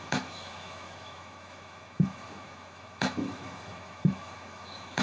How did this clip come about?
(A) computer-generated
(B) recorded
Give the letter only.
A